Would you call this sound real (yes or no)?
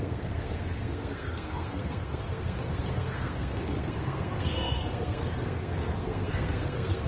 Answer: no